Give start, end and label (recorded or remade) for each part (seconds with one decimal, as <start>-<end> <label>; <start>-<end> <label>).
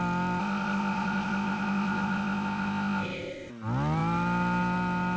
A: 0.0-0.4 recorded; 0.4-3.5 remade; 3.5-5.2 recorded